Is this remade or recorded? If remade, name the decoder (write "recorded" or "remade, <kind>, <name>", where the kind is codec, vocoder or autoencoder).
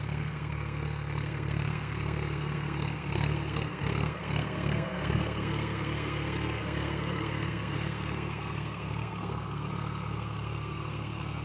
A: remade, codec, SNAC